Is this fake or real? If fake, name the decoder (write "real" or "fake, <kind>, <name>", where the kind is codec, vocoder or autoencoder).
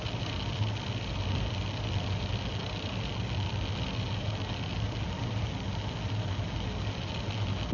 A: real